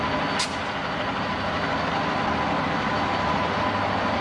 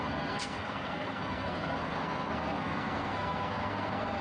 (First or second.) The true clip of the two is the first